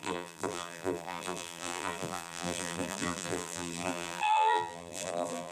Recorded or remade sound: remade